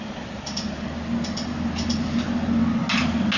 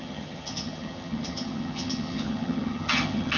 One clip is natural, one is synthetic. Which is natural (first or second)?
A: first